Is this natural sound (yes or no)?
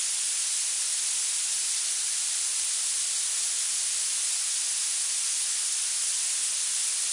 yes